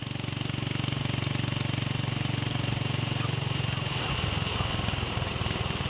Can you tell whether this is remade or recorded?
recorded